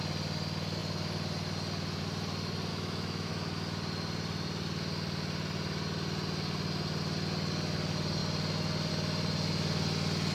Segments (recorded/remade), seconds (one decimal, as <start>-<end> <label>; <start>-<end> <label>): 0.0-2.7 recorded; 2.7-3.3 remade; 3.3-10.3 recorded